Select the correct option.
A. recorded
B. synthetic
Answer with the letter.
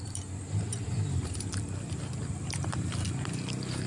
B